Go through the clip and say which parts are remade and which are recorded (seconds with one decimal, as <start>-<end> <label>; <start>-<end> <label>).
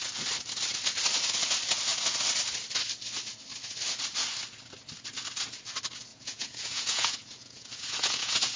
0.0-6.1 recorded; 6.1-8.6 remade